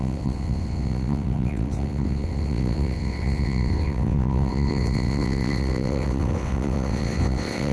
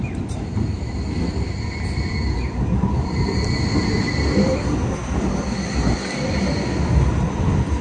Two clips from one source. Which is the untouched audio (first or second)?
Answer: second